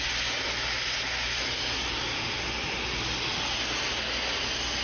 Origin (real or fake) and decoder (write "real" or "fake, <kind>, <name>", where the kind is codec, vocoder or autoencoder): real